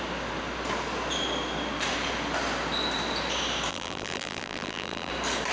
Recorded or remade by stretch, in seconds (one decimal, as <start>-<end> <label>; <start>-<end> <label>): 0.0-3.7 recorded; 3.7-5.1 remade; 5.1-5.5 recorded